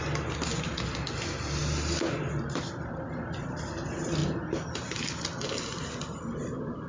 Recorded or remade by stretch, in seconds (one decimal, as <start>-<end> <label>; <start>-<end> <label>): 0.0-6.9 recorded